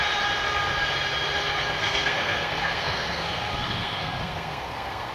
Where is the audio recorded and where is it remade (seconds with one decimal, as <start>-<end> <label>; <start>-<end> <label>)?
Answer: 0.0-1.8 recorded; 1.8-5.1 remade

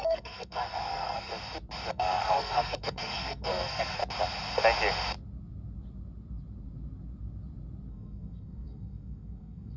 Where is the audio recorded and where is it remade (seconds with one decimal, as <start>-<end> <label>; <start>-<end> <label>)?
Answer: 0.0-1.3 remade; 1.3-1.9 recorded; 1.9-4.0 remade; 4.0-7.9 recorded; 7.9-9.8 remade